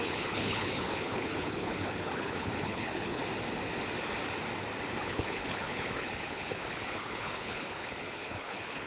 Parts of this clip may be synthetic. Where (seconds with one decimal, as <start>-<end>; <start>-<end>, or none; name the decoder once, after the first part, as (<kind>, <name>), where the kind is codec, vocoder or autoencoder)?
0.0-3.2 (codec, HILCodec); 5.0-8.9